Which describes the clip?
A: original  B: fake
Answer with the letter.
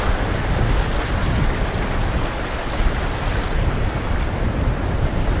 A